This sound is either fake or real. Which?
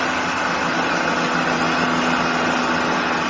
real